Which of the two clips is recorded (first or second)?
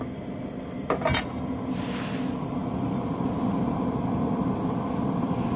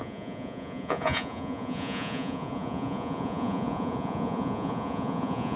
first